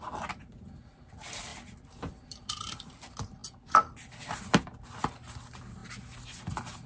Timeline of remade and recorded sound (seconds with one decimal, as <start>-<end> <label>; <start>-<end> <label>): 0.0-6.9 recorded